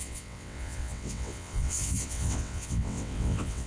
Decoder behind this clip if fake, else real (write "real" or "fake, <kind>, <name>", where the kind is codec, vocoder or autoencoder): fake, vocoder, WaveNeXt